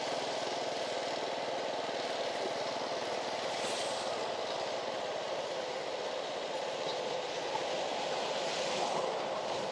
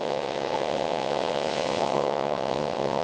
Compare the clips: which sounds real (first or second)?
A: first